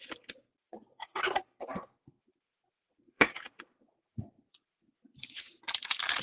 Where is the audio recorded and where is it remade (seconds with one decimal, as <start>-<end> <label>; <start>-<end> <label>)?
0.0-0.7 recorded; 0.7-1.2 remade; 1.2-1.7 recorded; 1.7-5.2 remade; 5.2-6.2 recorded